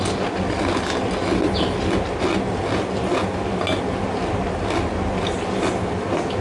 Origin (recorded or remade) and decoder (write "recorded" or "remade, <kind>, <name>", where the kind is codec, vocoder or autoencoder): recorded